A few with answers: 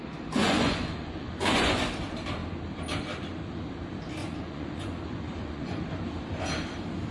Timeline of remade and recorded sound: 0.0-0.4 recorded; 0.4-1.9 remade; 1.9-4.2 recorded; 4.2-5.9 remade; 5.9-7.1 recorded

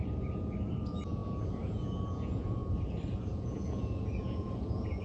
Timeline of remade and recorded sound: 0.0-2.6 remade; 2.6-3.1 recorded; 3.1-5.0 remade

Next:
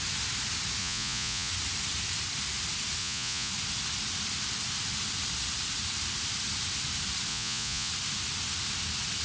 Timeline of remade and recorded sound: 0.0-0.8 recorded; 0.8-1.5 remade; 1.5-3.0 recorded; 3.0-3.5 remade; 3.5-7.3 recorded; 7.3-7.9 remade; 7.9-9.2 recorded

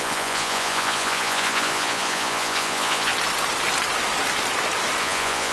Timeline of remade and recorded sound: 0.0-3.1 remade; 3.1-5.0 recorded; 5.0-5.5 remade

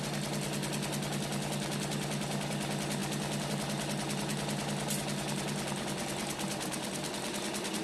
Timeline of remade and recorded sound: 0.0-7.8 recorded

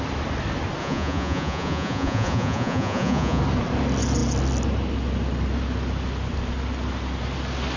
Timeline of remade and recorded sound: 0.0-0.8 recorded; 0.8-3.4 remade; 3.4-7.8 recorded

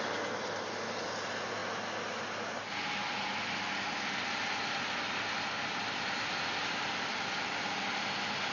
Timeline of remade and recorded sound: 0.0-8.5 recorded

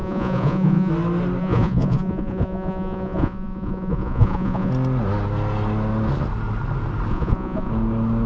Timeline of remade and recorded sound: 0.0-0.9 remade; 0.9-1.4 recorded; 1.4-4.7 remade; 4.7-7.1 recorded; 7.1-7.7 remade; 7.7-8.3 recorded